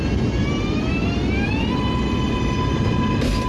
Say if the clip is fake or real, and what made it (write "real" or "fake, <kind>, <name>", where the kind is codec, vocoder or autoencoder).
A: real